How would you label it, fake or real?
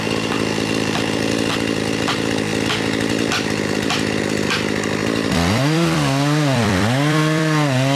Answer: fake